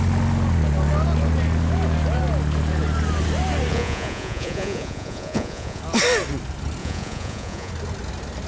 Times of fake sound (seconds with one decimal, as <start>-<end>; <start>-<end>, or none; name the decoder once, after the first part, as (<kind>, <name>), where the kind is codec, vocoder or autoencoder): 3.7-5.8 (vocoder, Vocos); 6.8-7.7

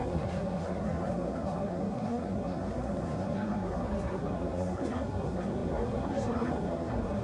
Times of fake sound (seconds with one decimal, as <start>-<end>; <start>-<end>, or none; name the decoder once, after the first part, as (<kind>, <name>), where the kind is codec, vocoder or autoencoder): 0.0-7.2 (codec, SNAC)